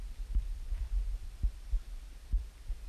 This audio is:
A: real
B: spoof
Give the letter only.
A